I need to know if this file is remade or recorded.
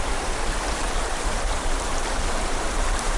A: remade